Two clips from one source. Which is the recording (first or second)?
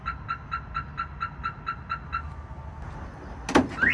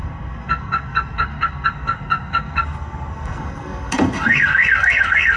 first